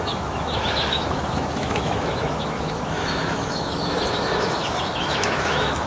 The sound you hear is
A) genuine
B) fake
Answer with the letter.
B